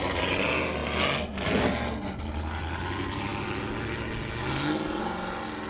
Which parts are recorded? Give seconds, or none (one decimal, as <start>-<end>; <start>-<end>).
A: 0.0-5.7